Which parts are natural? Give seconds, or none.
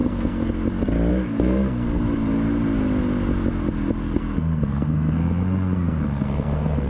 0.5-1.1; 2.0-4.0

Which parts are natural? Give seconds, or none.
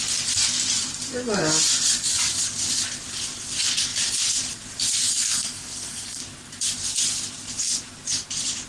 0.0-5.1; 6.2-8.7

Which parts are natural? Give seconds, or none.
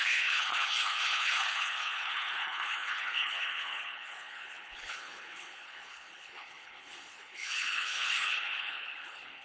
none